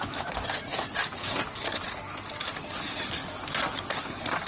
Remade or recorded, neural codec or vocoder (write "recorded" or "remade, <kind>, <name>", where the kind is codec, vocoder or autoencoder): recorded